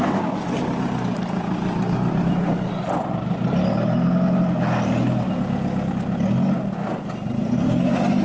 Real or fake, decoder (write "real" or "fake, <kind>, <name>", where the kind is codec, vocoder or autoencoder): real